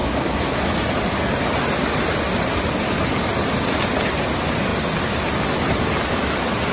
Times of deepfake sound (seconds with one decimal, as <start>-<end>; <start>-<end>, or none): none